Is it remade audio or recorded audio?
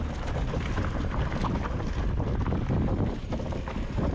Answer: recorded